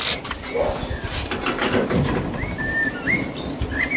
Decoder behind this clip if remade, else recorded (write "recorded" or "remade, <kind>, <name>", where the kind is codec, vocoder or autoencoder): recorded